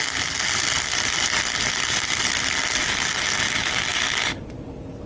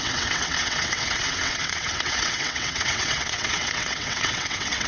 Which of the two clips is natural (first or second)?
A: first